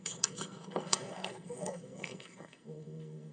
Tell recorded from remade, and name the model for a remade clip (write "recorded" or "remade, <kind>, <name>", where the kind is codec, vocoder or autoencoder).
remade, codec, SNAC